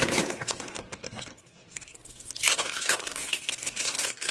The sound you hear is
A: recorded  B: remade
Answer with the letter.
B